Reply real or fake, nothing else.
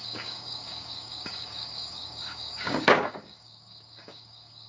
fake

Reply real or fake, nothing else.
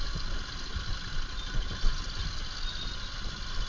real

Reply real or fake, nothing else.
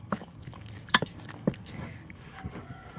fake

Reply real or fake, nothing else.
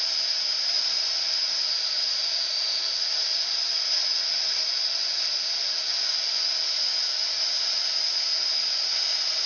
real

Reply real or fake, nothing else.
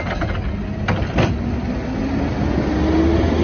real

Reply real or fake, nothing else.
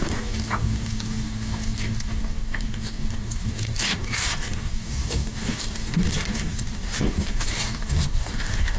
fake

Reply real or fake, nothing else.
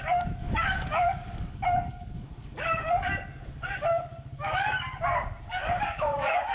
fake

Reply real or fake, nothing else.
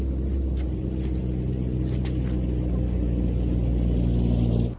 real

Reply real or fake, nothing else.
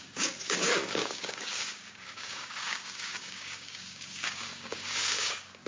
fake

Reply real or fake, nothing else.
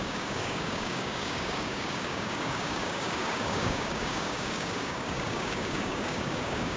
fake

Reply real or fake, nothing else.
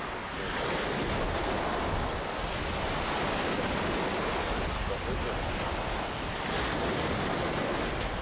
real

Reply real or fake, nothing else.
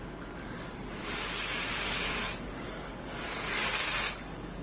fake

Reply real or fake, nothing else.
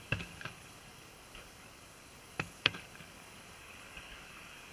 fake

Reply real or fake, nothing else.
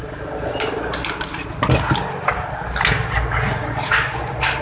real